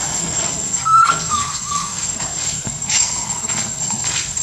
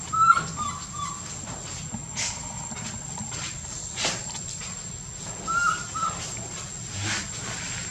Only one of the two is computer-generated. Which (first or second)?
first